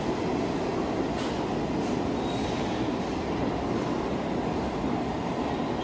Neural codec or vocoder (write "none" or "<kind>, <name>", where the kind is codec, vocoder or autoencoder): none